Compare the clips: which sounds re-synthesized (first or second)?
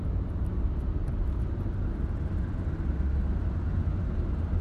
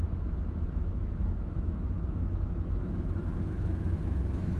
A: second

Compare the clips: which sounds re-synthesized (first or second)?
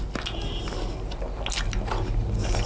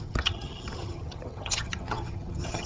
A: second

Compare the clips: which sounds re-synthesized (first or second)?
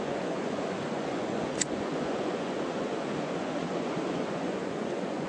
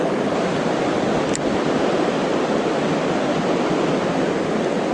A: first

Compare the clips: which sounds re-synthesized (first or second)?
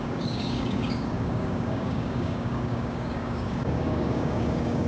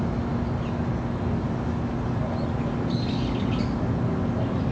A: first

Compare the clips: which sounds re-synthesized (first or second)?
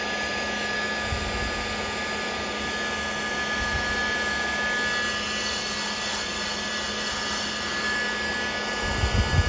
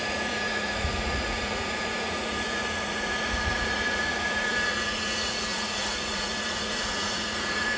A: second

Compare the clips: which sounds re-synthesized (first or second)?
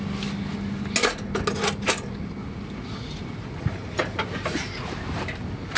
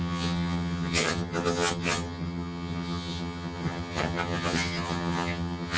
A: second